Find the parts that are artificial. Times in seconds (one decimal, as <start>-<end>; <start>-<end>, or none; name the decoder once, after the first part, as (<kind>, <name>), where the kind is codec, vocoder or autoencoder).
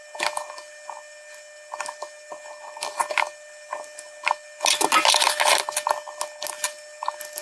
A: none